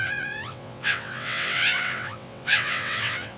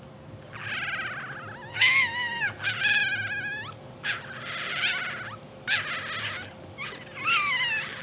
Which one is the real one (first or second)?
second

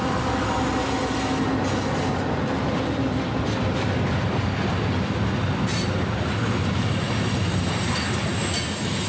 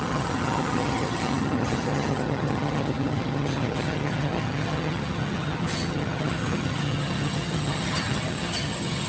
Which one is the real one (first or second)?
first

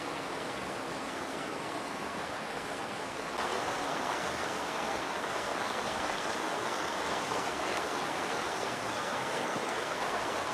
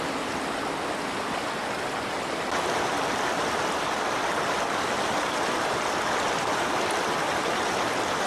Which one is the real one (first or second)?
second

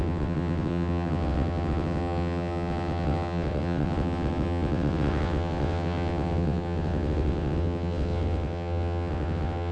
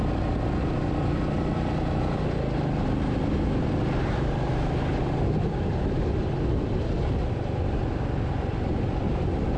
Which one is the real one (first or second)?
second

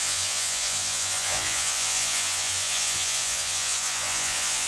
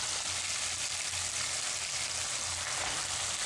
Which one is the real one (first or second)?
second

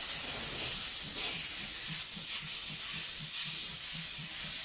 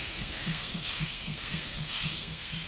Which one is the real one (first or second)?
first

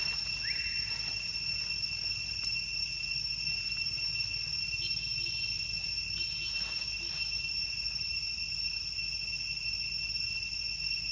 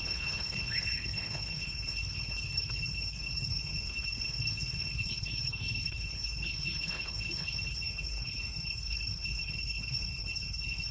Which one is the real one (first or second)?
first